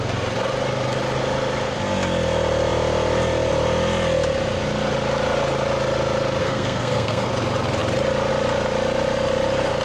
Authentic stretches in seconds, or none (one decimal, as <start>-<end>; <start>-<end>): 0.0-6.4; 7.3-9.8